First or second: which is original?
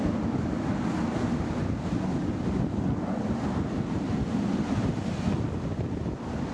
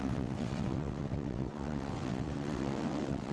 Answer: first